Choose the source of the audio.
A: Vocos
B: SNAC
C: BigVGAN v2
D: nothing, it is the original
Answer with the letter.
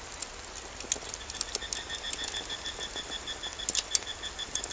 D